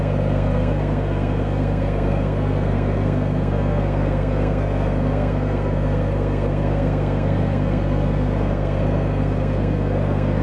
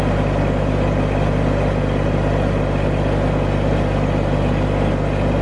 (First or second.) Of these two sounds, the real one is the second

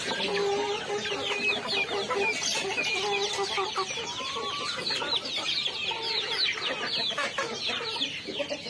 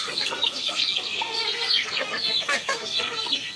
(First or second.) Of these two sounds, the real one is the first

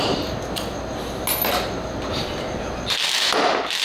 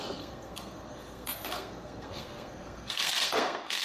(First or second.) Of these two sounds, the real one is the first